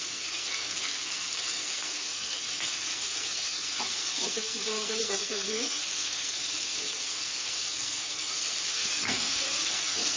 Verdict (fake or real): fake